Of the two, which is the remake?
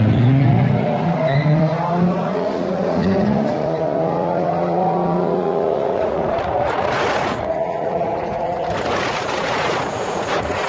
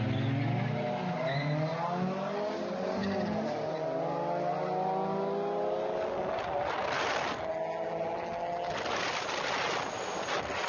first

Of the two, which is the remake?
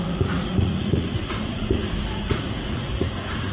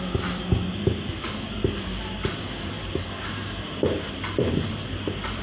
first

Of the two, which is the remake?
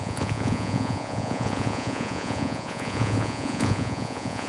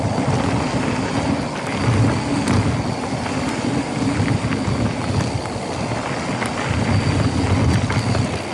first